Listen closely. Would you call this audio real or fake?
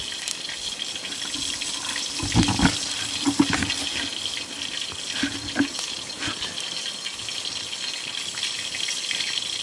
real